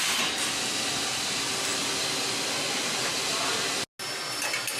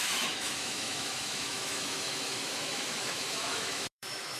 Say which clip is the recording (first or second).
first